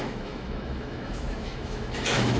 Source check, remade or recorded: remade